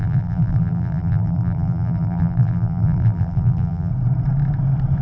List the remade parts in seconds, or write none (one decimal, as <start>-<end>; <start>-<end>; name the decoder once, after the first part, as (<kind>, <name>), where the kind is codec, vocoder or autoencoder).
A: 0.0-3.9 (vocoder, BigVGAN v2)